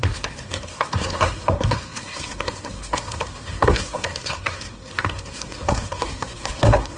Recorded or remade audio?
remade